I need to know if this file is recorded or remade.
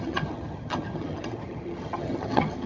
remade